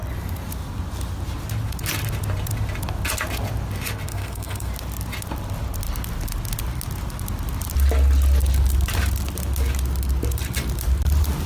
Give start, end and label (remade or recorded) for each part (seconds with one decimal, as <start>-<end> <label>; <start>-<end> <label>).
0.0-4.1 recorded; 4.1-4.7 remade; 4.7-11.5 recorded